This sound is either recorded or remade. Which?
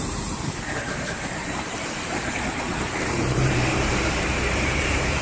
remade